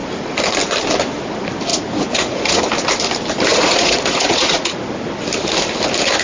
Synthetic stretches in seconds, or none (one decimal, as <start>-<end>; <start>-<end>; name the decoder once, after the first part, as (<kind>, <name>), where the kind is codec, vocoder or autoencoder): 1.7-2.6 (vocoder, Vocos); 3.5-4.9

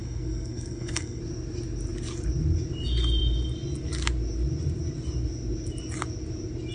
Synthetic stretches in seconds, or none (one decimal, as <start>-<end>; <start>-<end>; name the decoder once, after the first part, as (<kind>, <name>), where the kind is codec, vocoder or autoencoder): 0.0-1.2 (codec, SNAC)

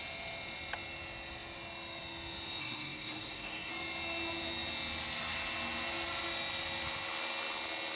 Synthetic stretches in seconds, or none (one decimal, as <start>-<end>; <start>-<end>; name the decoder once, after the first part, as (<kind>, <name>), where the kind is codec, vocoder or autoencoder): 2.6-3.7 (codec, SNAC)